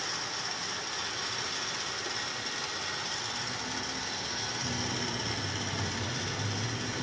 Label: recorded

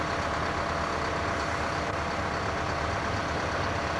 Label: recorded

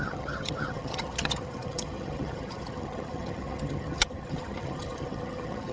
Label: remade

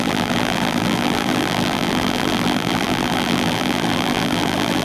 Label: remade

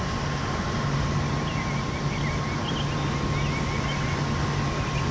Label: recorded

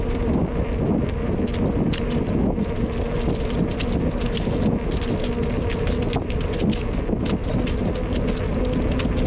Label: recorded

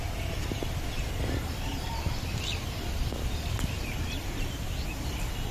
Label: recorded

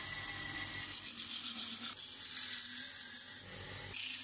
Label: recorded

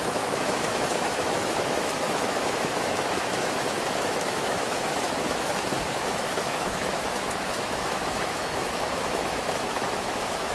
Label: remade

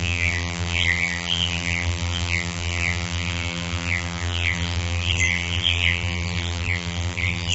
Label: remade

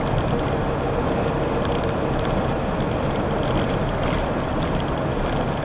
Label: recorded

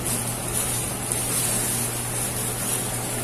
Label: recorded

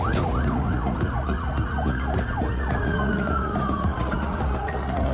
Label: remade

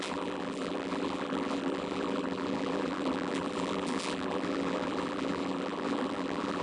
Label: remade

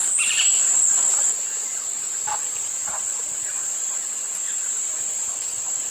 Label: remade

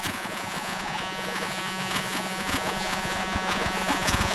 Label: remade